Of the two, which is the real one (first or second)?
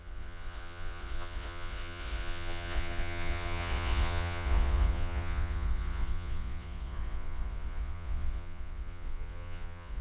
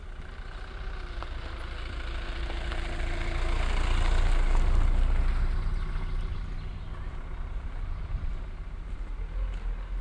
second